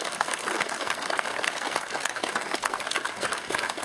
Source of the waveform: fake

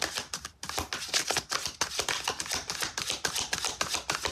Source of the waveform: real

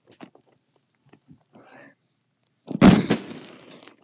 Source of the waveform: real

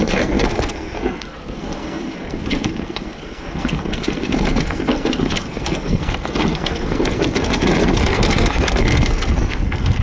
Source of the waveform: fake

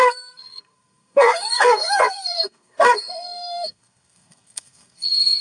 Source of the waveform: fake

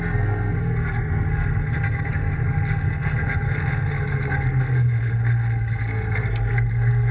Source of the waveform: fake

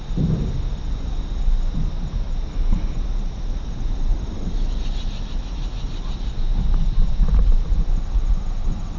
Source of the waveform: real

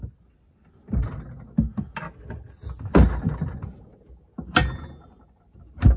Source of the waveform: real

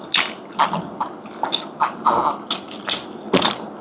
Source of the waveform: real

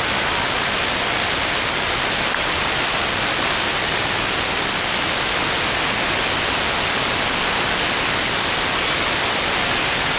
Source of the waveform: real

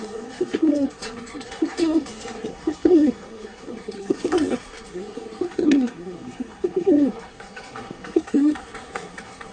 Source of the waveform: fake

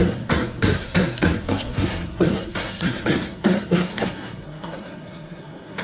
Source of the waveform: fake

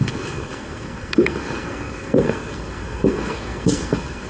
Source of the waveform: fake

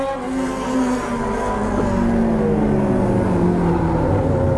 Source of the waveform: real